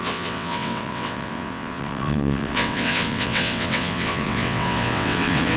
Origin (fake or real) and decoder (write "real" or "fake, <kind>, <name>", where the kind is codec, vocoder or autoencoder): fake, vocoder, WaveNeXt